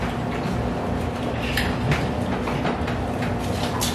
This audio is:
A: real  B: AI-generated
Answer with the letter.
A